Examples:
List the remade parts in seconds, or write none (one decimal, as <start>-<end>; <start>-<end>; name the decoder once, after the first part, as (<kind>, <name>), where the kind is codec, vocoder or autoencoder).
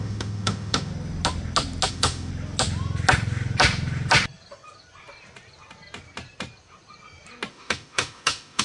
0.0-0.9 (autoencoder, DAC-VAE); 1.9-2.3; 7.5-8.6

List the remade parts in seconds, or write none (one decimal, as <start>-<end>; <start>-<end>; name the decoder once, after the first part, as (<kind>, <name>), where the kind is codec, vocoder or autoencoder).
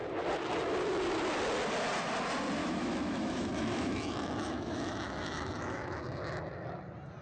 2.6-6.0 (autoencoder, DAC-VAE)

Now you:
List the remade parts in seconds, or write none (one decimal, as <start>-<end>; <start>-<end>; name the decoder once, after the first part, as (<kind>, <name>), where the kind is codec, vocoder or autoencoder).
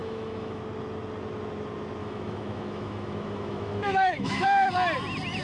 0.0-0.6 (autoencoder, DAC-VAE); 2.0-4.7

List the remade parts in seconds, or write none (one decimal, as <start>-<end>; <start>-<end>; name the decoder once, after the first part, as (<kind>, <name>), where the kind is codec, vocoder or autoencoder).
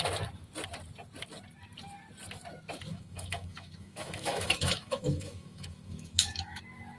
2.9-6.6 (autoencoder, DAC-VAE)